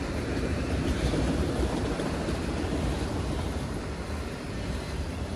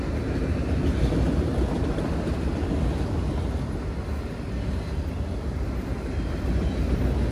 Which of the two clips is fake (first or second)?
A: first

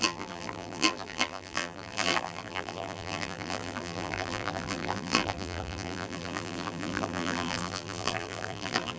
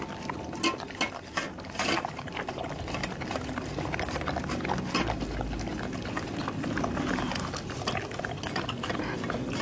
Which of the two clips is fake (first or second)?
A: first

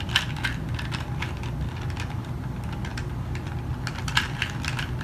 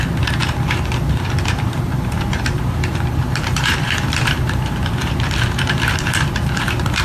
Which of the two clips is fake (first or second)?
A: second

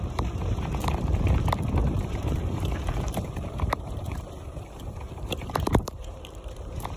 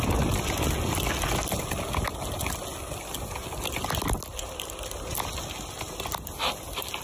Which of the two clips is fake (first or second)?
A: first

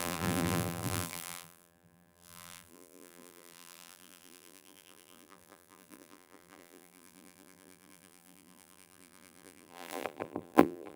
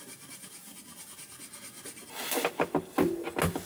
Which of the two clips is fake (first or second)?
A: first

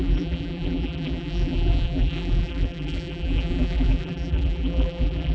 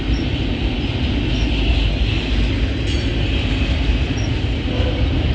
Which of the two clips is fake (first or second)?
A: first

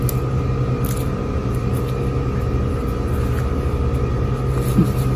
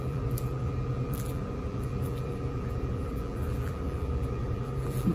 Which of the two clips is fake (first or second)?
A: second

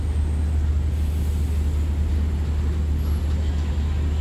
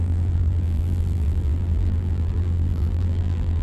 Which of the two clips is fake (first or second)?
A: second